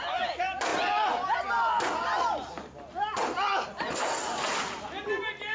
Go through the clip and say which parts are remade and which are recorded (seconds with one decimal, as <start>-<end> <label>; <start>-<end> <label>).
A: 0.0-5.5 recorded